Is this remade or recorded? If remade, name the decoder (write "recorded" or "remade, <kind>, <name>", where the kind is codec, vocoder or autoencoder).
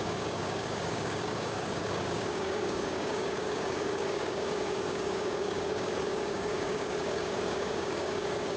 remade, codec, DAC